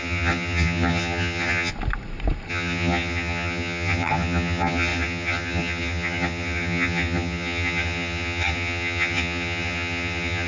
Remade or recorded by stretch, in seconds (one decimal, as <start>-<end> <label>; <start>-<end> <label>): 0.0-1.7 remade; 1.7-2.5 recorded; 2.5-10.5 remade